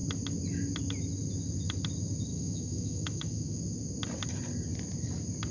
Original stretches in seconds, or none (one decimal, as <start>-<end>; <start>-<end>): 0.0-2.3; 3.6-5.5